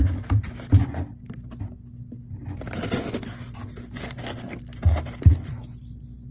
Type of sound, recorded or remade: recorded